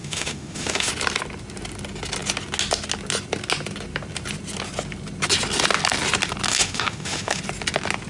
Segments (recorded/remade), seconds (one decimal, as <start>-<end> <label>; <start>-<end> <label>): 0.0-0.9 remade; 0.9-6.5 recorded; 6.5-7.4 remade; 7.4-8.1 recorded